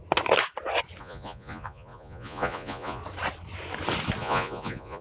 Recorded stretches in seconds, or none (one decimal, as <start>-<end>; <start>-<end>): 0.0-1.0; 3.0-4.2